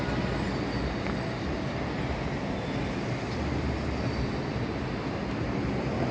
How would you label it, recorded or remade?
recorded